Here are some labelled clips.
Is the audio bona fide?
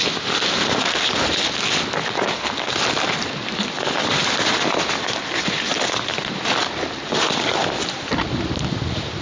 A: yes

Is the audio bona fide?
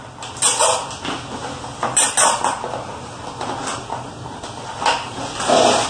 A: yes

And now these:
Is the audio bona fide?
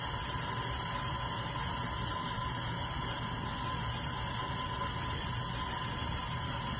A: yes